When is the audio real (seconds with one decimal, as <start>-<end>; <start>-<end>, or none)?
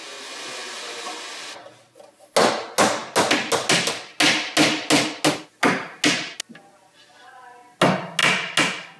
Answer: 0.0-9.0